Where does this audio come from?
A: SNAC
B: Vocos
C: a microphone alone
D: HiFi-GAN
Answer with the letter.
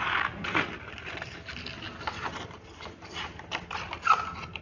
C